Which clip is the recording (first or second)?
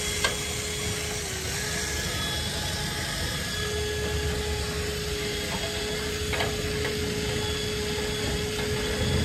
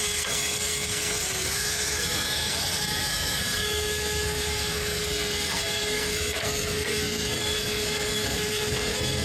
first